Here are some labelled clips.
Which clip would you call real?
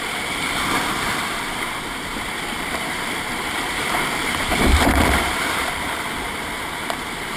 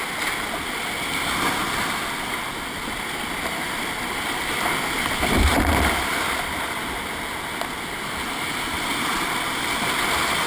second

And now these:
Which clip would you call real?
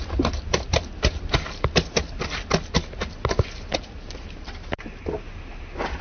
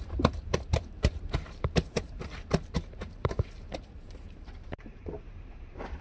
first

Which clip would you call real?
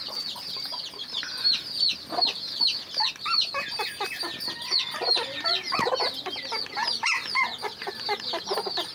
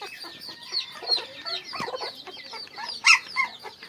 first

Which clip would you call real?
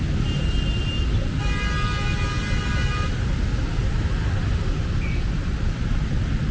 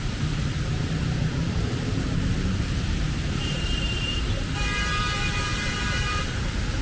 first